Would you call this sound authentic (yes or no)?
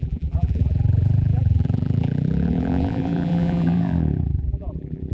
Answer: no